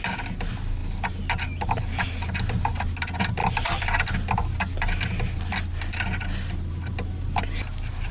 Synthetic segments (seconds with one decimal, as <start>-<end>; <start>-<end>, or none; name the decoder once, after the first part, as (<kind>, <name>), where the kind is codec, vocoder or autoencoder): none